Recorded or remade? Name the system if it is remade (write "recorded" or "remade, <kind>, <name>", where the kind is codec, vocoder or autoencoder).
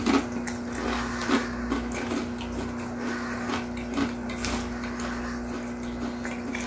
recorded